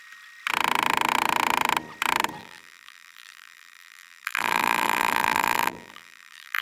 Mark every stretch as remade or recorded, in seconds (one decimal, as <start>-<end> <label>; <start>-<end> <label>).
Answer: 0.0-2.4 recorded; 2.4-6.6 remade